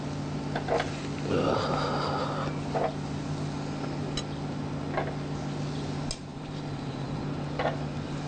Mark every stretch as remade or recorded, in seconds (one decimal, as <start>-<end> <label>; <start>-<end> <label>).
0.0-6.3 recorded; 6.3-7.2 remade; 7.2-8.3 recorded